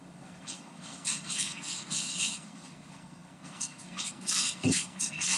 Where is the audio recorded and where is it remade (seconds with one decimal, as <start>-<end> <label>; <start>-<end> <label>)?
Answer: 0.0-5.4 remade

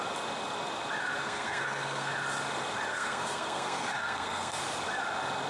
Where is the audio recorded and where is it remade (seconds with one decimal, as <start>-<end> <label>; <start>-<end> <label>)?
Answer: 0.0-1.2 recorded; 1.2-2.1 remade; 2.1-2.9 recorded; 2.9-4.6 remade; 4.6-5.5 recorded